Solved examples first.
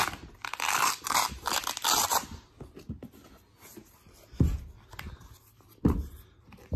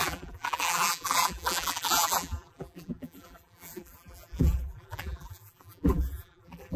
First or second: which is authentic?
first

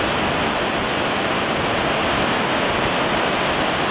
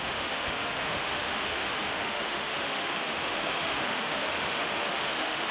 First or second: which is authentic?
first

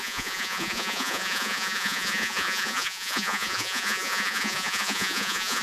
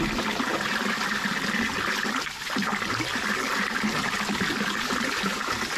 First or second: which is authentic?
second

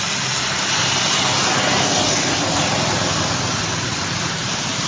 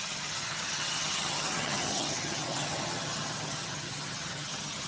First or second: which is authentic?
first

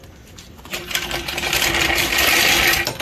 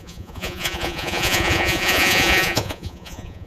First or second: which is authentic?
first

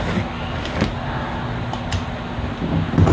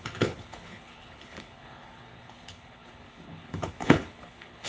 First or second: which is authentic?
first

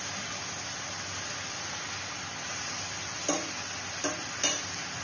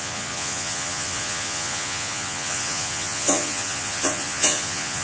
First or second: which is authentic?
first